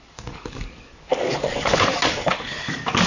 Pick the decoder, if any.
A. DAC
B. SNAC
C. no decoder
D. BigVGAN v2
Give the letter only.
A